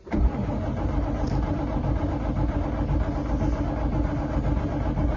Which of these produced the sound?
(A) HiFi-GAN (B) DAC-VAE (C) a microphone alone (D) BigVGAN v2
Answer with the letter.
C